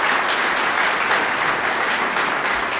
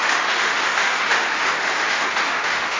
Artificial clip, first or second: second